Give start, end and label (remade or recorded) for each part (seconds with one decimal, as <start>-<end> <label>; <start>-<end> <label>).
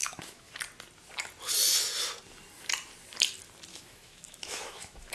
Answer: 0.0-0.6 remade; 0.6-3.7 recorded; 3.7-5.1 remade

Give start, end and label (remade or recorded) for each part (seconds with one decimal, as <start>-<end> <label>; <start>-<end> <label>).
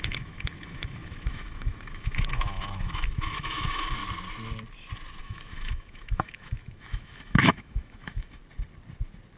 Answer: 0.0-4.0 remade; 4.0-5.2 recorded; 5.2-8.4 remade; 8.4-9.4 recorded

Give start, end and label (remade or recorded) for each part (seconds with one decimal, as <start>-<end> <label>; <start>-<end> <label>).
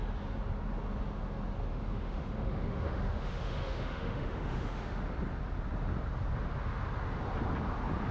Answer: 0.0-1.7 recorded; 1.7-5.0 remade; 5.0-8.1 recorded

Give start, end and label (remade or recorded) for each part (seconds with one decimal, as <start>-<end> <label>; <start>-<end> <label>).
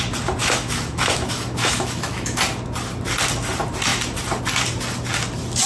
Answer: 0.0-0.4 recorded; 0.4-2.4 remade; 2.4-5.7 recorded